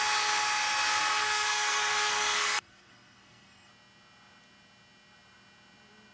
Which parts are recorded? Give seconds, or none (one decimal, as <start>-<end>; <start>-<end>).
0.0-1.0; 3.7-6.1